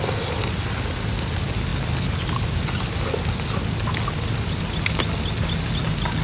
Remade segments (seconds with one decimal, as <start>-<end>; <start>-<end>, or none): none